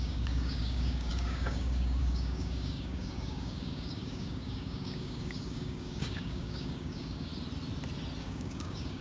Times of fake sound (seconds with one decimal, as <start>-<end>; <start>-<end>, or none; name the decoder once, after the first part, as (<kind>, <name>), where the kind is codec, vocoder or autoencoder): 0.0-7.3 (codec, DAC); 8.2-9.0